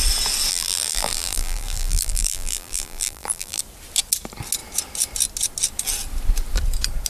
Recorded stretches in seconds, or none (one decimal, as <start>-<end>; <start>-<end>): 0.0-0.5; 3.6-7.1